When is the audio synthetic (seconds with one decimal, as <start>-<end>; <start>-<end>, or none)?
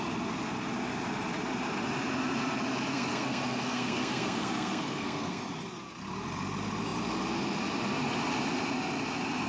2.9-5.4